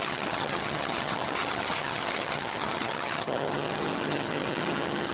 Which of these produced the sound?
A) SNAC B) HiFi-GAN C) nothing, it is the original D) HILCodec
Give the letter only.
B